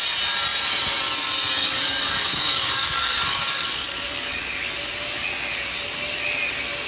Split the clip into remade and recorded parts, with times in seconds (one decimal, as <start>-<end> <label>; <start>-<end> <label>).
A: 0.0-1.6 recorded; 1.6-4.7 remade; 4.7-6.9 recorded